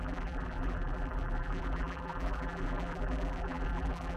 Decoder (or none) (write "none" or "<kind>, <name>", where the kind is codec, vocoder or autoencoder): vocoder, BigVGAN v2